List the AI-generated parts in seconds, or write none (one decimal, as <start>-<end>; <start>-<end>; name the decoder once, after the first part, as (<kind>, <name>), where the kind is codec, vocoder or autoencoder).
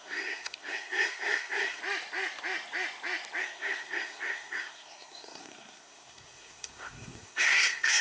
0.0-1.8 (codec, SNAC); 3.4-8.0